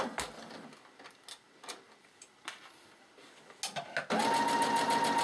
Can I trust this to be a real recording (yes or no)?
yes